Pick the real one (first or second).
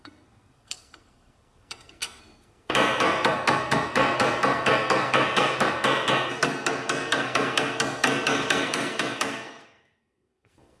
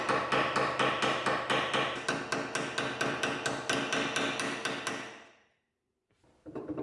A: second